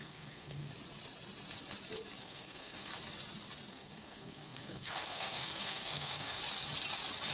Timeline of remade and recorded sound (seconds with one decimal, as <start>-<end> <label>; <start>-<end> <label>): 0.0-0.7 remade; 0.7-2.2 recorded; 2.2-2.9 remade; 2.9-3.7 recorded; 3.7-6.4 remade; 6.4-7.3 recorded